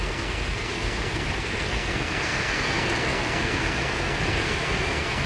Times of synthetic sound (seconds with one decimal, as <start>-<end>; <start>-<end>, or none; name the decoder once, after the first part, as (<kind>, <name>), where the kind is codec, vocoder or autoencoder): 0.0-5.3 (codec, SNAC)